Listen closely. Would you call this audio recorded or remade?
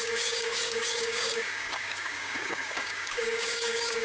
remade